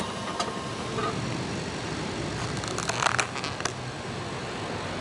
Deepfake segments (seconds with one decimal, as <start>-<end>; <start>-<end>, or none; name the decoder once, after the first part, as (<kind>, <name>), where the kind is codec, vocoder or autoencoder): none

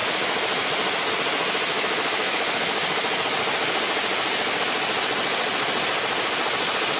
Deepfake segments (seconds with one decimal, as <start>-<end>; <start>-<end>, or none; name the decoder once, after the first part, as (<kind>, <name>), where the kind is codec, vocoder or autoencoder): 1.7-2.4 (autoencoder, DAC-VAE)

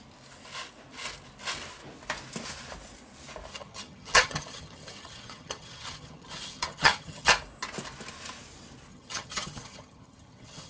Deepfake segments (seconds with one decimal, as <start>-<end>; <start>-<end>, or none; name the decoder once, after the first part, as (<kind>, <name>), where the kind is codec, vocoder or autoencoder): 3.5-7.3 (vocoder, HiFi-GAN); 8.9-10.7

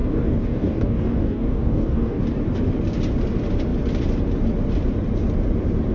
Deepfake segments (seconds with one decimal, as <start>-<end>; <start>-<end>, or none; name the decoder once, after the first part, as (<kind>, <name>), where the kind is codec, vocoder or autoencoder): 0.0-2.2 (codec, DAC)